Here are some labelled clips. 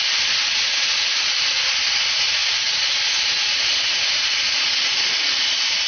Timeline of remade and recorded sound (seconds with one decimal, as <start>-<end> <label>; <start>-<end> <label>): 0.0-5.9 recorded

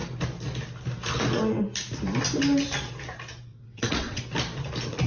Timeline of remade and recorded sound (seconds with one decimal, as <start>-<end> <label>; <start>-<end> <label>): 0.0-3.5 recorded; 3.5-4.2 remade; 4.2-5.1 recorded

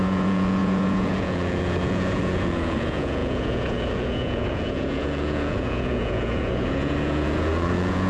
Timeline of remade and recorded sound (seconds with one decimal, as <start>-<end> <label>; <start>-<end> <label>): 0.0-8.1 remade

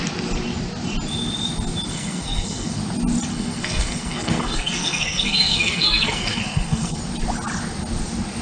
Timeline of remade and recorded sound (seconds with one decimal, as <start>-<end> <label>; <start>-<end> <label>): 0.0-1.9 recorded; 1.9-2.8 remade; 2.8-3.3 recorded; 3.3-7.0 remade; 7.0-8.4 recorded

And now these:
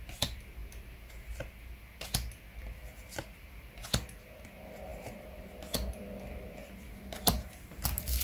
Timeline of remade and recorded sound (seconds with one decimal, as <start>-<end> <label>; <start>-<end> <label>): 0.0-8.2 recorded

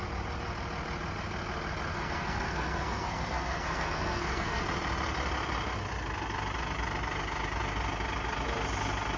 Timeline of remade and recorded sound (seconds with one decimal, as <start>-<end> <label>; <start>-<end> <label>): 0.0-1.9 recorded; 1.9-4.6 remade; 4.6-9.2 recorded